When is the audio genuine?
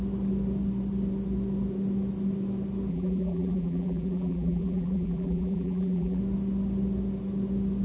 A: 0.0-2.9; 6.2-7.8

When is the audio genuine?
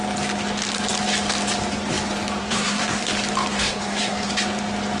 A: 0.0-2.4; 3.1-3.5; 4.3-5.0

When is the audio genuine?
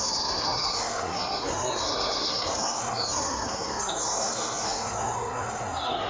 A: none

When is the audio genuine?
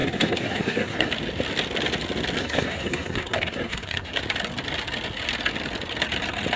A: 1.1-2.4; 4.2-6.6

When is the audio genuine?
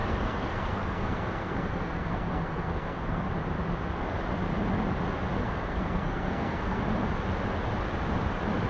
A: 3.3-5.4; 6.8-8.7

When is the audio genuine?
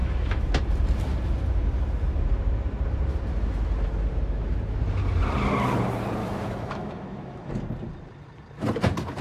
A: 0.5-6.2; 7.5-9.2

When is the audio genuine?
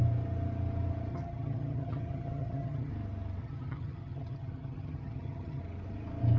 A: 0.0-1.1; 2.9-3.4; 5.6-6.4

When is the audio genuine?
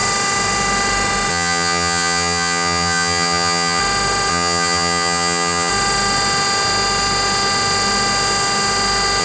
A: 0.0-1.3; 3.8-4.3; 5.7-9.2